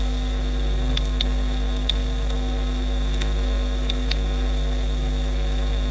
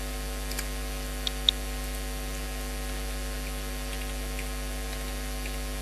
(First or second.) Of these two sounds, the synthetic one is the first